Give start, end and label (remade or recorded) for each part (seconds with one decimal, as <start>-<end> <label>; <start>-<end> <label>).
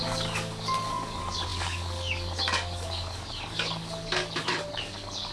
0.0-5.3 remade